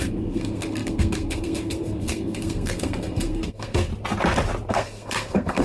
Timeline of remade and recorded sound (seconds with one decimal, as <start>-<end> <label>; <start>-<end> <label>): 0.0-3.9 remade; 3.9-4.7 recorded; 4.7-5.6 remade